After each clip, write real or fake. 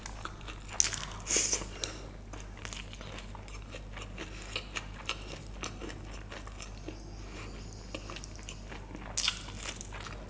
real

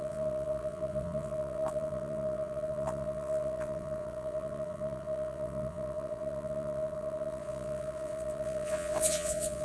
fake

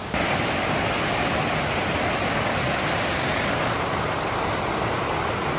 real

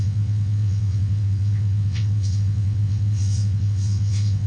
fake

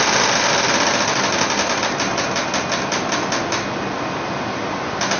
real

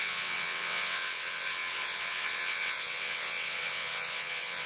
fake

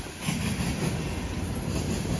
real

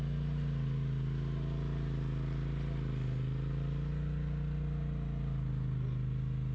real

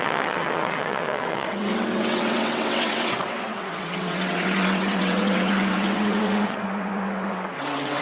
fake